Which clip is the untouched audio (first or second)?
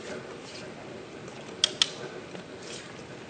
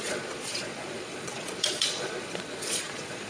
first